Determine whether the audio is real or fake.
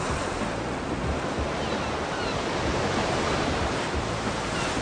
real